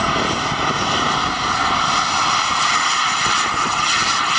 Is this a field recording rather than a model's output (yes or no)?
yes